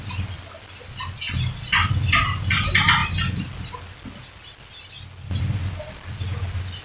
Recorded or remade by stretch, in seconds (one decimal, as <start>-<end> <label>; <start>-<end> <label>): 0.0-6.8 recorded